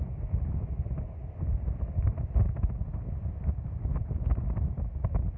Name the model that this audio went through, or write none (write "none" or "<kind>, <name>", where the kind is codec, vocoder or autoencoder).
none